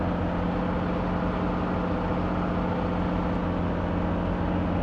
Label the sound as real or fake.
real